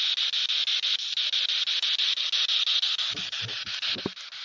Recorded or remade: recorded